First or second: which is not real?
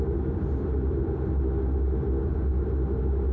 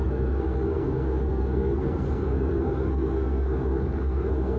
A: second